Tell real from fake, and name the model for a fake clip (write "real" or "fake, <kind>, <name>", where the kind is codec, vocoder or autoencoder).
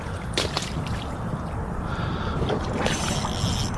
real